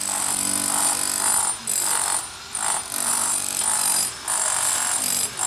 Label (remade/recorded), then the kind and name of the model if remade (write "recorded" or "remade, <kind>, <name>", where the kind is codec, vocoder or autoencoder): recorded